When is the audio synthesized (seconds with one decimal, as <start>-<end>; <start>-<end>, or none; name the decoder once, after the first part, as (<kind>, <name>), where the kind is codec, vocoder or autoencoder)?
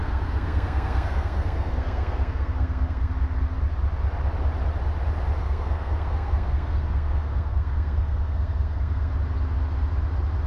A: 0.0-3.1 (codec, SNAC); 5.4-9.1